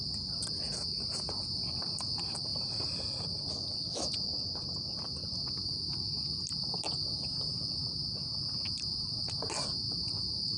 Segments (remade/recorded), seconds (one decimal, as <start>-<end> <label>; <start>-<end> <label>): 0.0-10.6 recorded